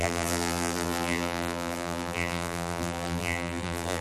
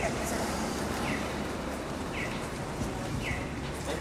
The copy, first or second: first